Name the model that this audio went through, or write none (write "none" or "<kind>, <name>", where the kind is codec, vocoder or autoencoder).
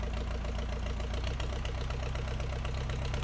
none